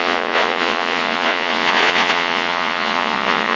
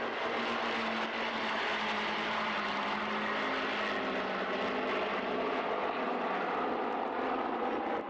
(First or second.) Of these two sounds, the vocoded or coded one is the first